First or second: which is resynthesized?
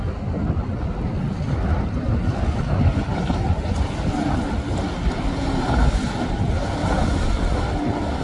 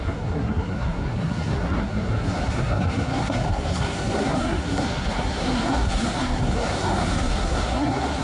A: second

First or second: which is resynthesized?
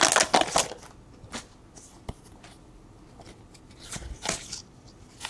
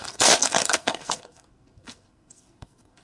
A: second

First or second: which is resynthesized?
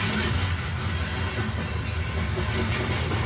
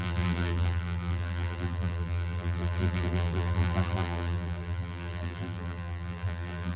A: second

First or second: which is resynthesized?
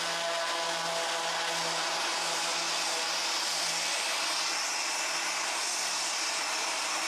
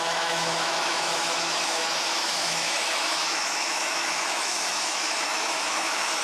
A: second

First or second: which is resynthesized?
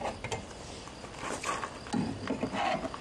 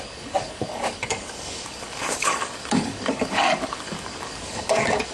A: second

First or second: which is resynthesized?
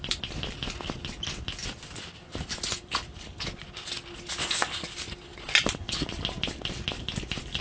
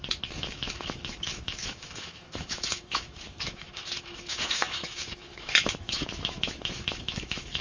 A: second